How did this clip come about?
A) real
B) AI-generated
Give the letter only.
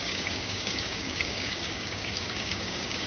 B